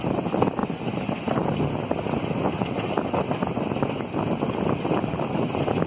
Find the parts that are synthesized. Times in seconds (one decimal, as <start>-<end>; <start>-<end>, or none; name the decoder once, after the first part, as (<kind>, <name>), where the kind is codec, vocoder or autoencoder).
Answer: none